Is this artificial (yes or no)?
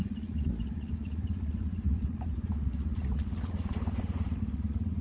yes